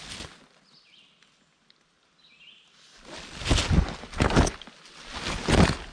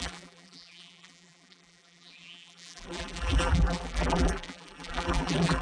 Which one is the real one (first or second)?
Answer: first